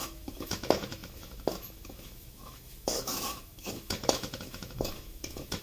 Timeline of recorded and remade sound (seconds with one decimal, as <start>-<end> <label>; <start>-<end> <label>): 0.0-5.6 remade